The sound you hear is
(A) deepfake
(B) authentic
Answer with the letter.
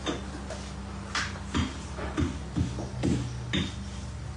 B